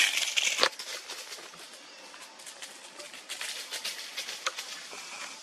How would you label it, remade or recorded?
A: recorded